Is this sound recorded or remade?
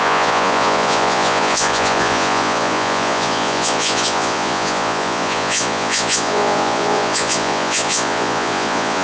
remade